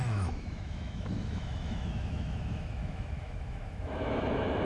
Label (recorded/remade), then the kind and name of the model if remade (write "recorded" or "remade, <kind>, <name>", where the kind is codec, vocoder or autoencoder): remade, autoencoder, DAC-VAE